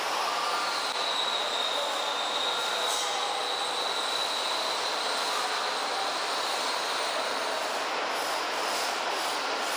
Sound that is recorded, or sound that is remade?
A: recorded